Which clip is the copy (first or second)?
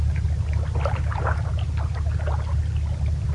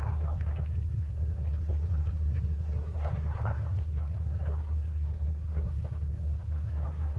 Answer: second